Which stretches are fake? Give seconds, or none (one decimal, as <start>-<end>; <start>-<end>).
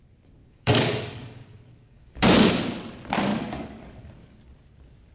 0.4-2.5; 3.3-4.4